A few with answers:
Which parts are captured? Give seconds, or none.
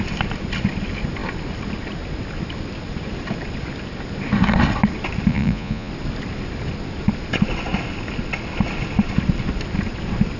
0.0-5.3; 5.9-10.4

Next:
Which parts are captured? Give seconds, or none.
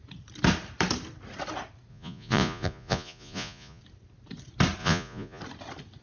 0.0-1.9; 3.8-4.8; 5.4-6.0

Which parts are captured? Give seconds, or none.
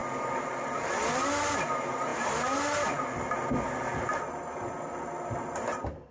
0.0-6.1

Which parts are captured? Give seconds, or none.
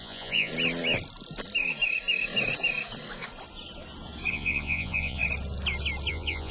0.5-4.3; 5.2-6.1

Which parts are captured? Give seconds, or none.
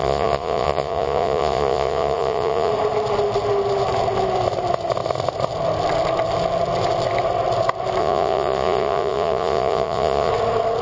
2.7-8.0; 10.3-10.8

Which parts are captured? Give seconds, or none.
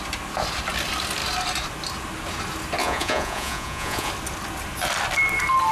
0.0-2.8; 4.1-5.7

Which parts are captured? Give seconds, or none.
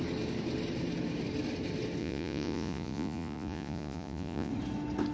0.0-2.0; 4.5-5.1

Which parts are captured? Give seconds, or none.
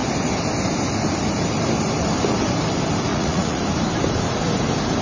0.0-3.1; 3.6-5.0